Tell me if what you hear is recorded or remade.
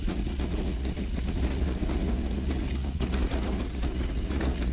remade